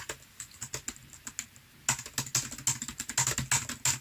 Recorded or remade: recorded